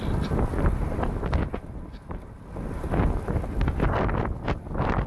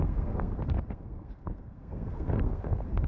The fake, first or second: second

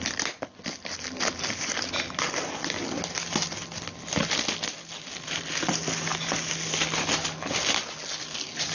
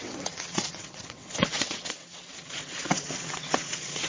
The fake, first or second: second